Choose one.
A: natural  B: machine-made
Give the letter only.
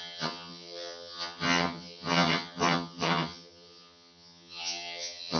B